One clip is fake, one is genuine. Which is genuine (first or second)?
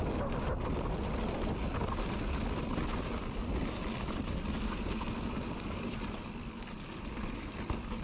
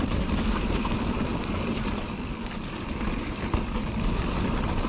first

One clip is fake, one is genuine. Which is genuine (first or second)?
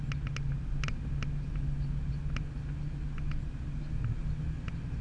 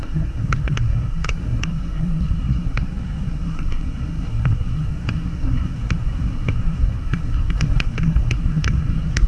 first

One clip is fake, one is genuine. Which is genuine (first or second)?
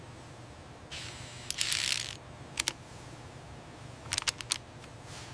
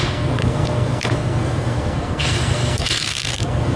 first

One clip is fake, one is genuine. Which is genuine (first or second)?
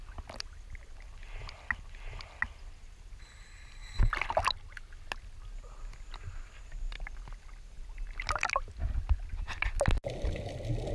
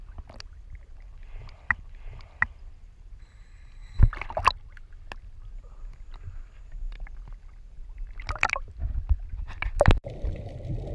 first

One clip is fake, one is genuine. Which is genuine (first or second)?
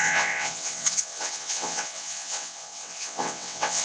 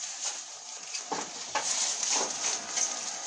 second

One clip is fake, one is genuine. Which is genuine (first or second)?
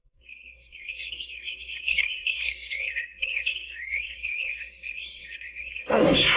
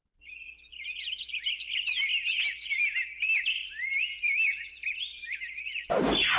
second